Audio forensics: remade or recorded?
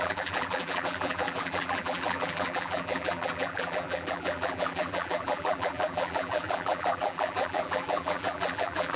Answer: remade